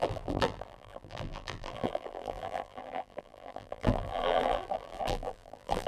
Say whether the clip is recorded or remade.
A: remade